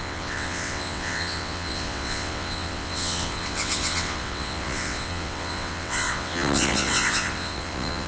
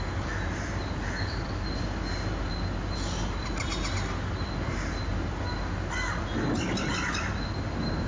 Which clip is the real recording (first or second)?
second